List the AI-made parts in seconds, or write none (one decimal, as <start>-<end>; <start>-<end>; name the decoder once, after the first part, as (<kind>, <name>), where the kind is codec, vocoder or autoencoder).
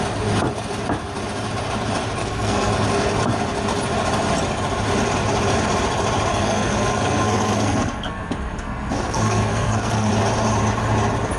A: 2.2-2.7 (codec, SNAC); 6.3-10.1